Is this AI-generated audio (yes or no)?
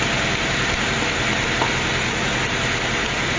no